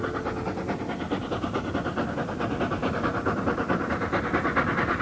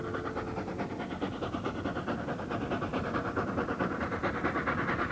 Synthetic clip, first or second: second